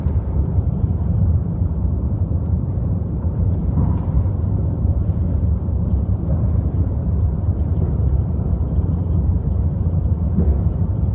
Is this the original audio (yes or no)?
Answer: no